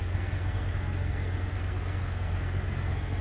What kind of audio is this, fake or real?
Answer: fake